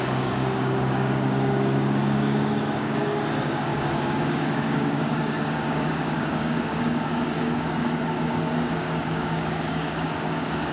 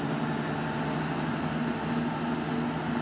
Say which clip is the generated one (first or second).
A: first